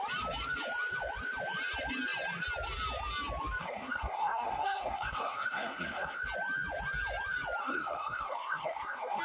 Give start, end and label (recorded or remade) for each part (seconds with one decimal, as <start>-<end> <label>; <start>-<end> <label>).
0.0-3.6 recorded; 3.6-6.2 remade; 6.2-7.6 recorded; 7.6-9.2 remade